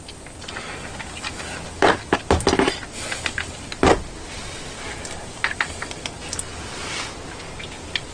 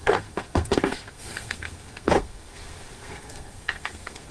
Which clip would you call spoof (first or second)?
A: second